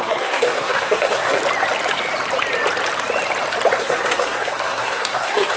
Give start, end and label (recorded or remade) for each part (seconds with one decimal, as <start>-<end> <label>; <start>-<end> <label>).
0.0-1.4 remade; 1.4-3.8 recorded; 3.8-5.6 remade